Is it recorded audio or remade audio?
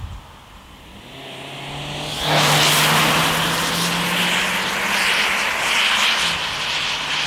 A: recorded